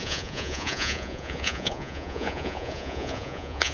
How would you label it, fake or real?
fake